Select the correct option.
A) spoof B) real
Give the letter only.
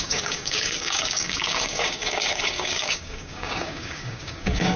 A